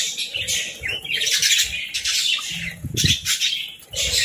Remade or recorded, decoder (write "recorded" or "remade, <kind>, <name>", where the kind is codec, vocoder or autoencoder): recorded